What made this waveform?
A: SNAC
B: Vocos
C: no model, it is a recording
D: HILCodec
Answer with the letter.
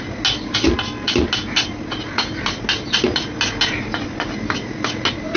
C